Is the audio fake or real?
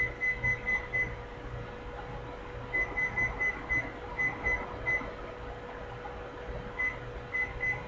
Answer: real